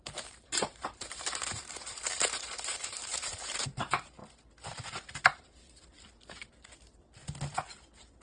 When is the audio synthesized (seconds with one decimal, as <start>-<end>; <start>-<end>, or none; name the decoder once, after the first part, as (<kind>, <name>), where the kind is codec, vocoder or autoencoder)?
0.0-4.2 (vocoder, BigVGAN v2)